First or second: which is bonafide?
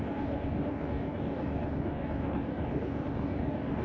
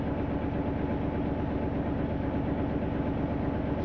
second